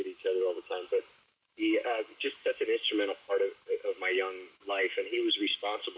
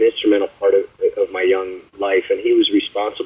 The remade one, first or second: first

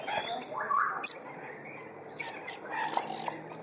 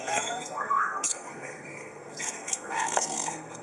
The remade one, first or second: second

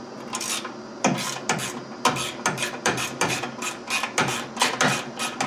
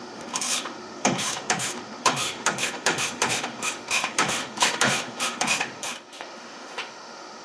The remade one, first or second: second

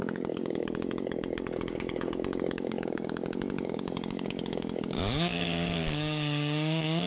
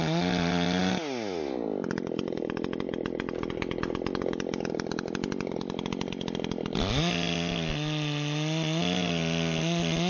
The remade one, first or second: first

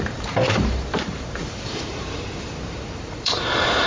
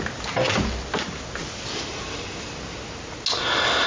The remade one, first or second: first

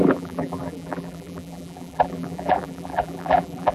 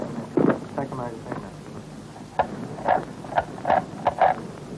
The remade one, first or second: first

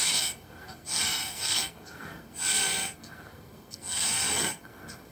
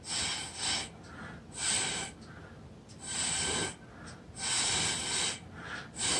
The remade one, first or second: first